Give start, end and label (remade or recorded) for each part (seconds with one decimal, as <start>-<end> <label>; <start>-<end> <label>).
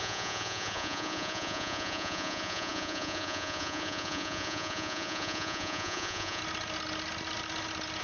0.0-6.4 remade; 6.4-8.0 recorded